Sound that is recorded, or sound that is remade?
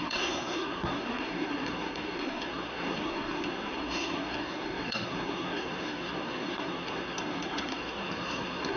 remade